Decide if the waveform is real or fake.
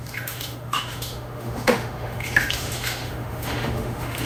fake